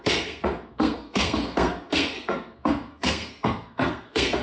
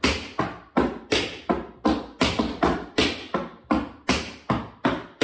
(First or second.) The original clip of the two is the second